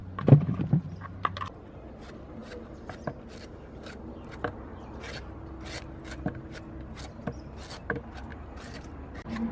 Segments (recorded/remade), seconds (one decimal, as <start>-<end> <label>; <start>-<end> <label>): 0.0-8.3 recorded; 8.3-9.5 remade